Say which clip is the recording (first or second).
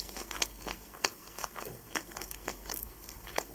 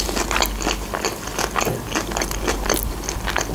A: second